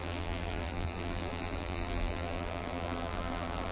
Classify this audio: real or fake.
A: fake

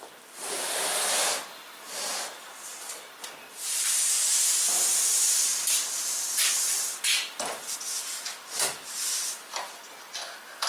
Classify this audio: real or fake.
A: real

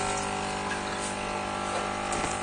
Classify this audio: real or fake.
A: real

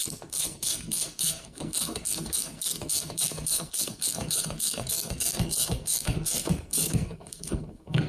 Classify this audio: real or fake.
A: fake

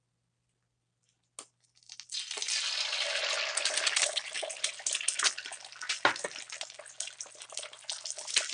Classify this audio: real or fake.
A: real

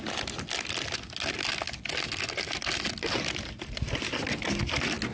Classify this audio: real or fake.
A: real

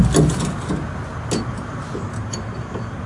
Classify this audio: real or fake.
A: real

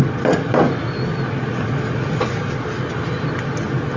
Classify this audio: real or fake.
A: real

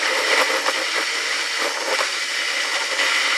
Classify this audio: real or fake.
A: real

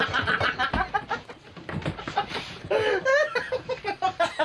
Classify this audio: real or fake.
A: fake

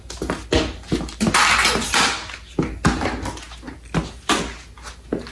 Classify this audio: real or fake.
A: real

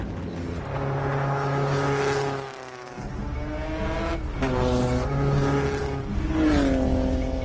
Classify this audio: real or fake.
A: real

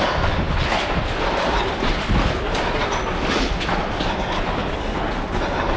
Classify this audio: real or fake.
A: real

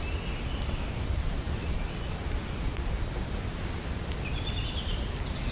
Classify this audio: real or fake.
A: real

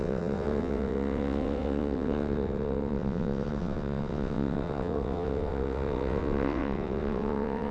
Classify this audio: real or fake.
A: fake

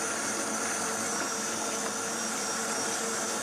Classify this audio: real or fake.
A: real